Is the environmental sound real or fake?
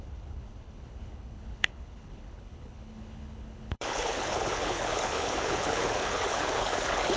fake